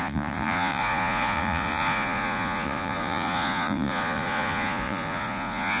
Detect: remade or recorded remade